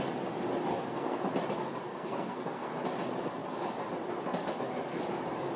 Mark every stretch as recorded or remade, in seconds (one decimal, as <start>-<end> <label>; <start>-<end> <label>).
0.0-0.7 recorded; 0.7-1.2 remade; 1.2-1.9 recorded; 1.9-2.7 remade; 2.7-5.6 recorded